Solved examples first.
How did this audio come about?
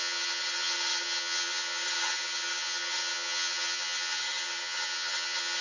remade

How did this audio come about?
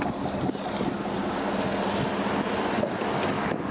recorded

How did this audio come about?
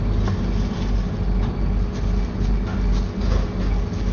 recorded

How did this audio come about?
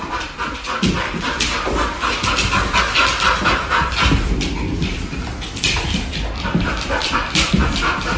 recorded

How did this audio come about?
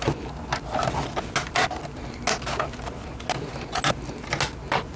recorded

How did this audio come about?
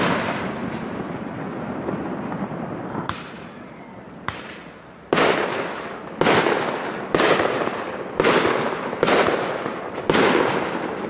recorded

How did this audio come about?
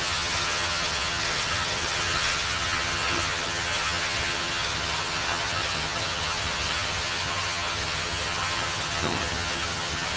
remade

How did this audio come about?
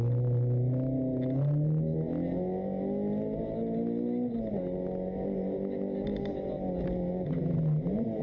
recorded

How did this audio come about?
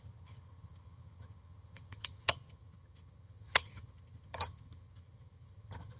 remade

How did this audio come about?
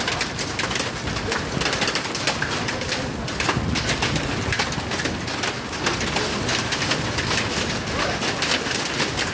recorded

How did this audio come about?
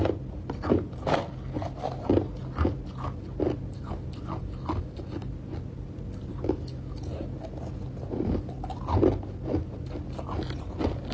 recorded